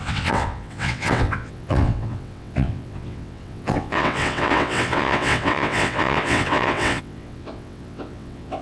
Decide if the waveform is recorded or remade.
remade